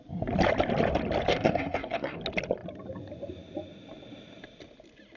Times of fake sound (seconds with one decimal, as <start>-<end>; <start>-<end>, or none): 1.3-2.2